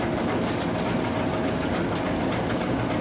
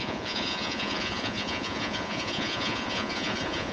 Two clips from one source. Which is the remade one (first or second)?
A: second